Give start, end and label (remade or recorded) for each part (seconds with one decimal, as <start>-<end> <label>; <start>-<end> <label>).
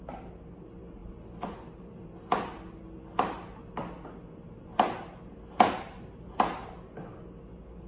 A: 0.0-7.9 recorded